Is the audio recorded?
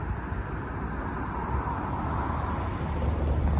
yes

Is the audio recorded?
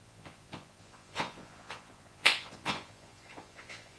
no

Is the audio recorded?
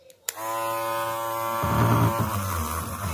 yes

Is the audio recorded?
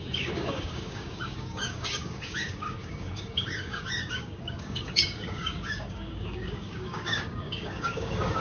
no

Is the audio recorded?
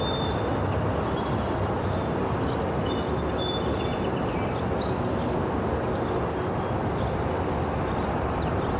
yes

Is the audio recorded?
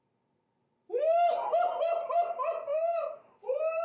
yes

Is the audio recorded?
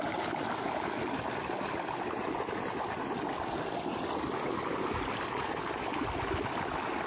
yes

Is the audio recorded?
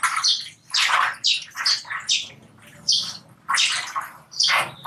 yes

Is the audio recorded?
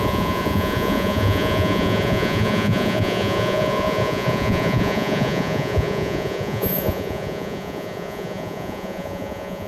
no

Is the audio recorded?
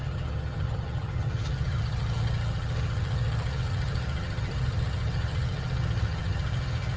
no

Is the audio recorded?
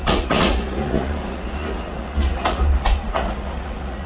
no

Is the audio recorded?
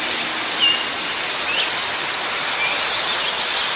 yes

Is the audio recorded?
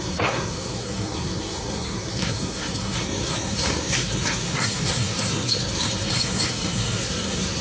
no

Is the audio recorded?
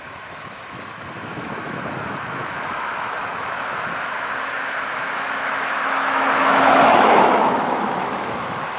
no